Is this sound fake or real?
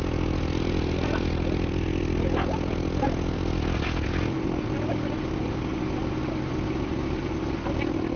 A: real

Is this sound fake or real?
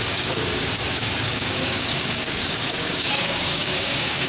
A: fake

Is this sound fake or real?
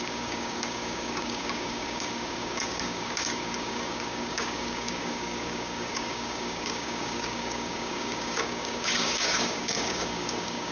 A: fake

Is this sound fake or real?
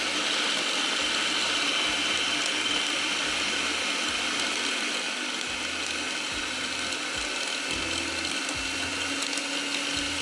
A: real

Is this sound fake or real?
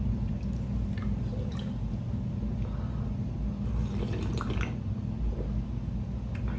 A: real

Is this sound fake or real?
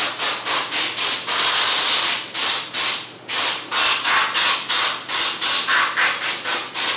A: real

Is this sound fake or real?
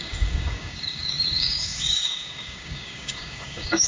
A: fake